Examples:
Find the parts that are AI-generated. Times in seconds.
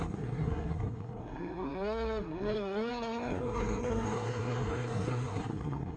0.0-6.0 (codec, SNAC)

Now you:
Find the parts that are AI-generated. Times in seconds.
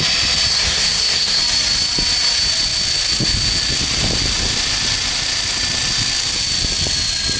0.5-1.4 (codec, SNAC)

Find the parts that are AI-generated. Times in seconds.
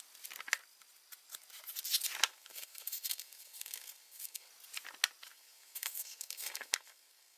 2.3-4.5 (codec, SNAC); 5.3-7.4